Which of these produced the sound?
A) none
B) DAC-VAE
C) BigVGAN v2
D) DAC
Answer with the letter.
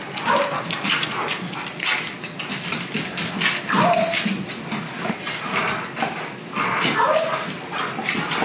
A